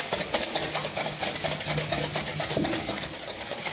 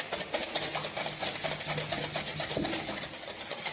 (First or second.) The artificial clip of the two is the first